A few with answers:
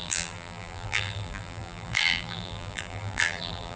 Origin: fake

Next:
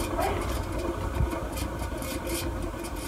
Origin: real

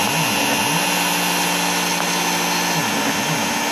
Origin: real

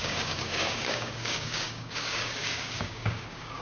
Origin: fake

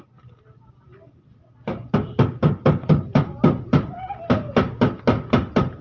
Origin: real